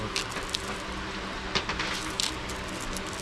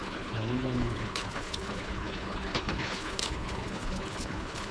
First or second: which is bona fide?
first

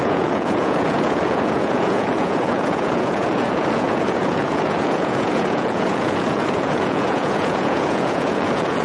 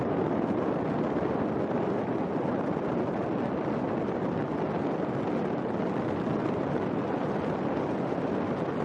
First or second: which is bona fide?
second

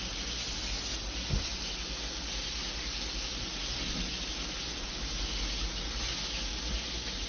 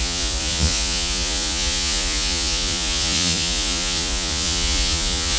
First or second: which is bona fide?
first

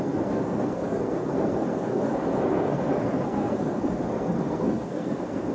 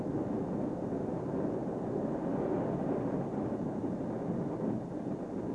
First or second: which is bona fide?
second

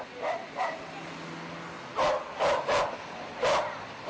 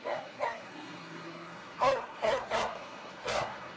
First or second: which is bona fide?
first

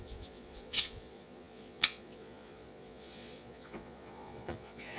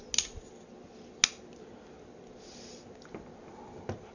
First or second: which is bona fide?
second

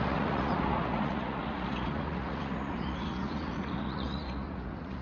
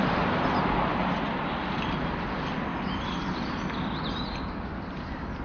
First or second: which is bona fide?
second